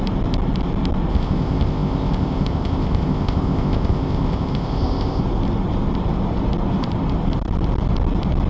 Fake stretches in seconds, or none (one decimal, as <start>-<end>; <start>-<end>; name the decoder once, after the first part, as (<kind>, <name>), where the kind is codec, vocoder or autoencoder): 1.1-5.2 (codec, ZipCodec)